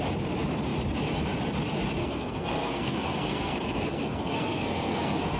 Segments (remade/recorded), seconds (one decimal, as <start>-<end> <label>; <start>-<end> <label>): 0.0-2.0 recorded; 2.0-5.4 remade